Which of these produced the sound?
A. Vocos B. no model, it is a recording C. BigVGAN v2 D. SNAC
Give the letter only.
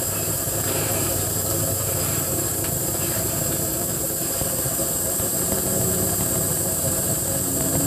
C